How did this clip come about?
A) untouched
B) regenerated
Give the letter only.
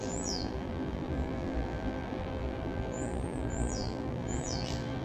B